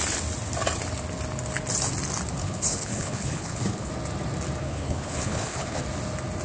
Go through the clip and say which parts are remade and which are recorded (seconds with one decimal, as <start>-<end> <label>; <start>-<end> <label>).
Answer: 0.0-2.4 recorded; 2.4-3.9 remade; 3.9-4.6 recorded; 4.6-5.8 remade; 5.8-6.4 recorded